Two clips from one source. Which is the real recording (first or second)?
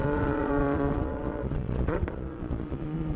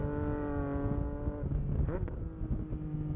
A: second